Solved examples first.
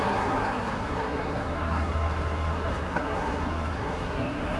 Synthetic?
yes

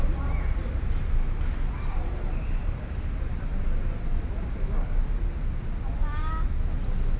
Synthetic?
no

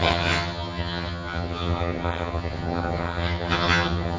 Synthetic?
yes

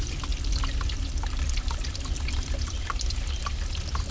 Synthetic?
yes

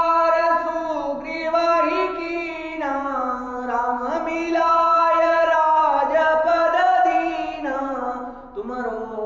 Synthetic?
yes